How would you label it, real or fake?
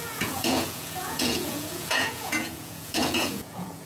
fake